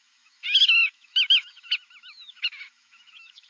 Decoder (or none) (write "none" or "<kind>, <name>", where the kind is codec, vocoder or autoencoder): autoencoder, DAC-VAE